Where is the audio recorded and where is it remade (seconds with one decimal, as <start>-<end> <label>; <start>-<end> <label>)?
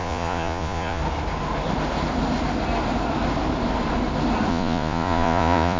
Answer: 0.0-1.0 remade; 1.0-4.5 recorded; 4.5-5.8 remade